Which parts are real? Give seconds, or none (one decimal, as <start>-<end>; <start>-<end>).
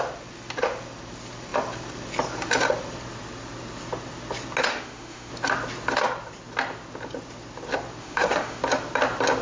0.0-4.7; 5.3-8.0; 8.6-9.4